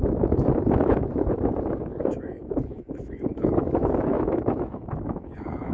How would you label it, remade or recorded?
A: remade